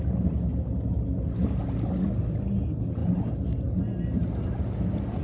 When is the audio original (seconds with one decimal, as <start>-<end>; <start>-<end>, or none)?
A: 0.0-5.2